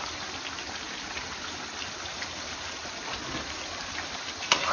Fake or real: real